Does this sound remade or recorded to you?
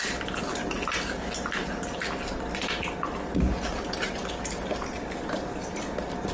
recorded